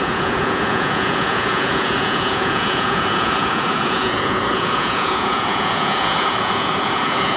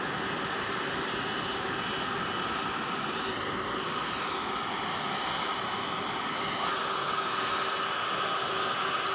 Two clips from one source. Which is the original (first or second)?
second